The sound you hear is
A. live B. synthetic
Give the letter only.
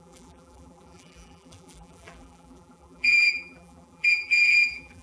B